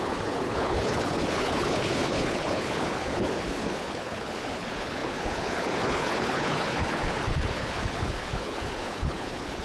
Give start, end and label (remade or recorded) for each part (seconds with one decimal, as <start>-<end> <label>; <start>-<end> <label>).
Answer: 0.0-9.6 remade